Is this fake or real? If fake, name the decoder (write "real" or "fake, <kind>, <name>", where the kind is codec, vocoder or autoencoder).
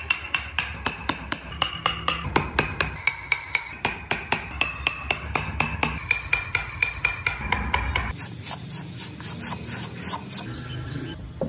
real